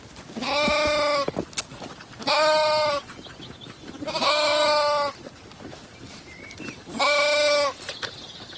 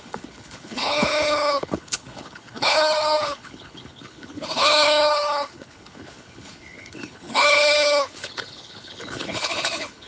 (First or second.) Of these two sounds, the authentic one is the first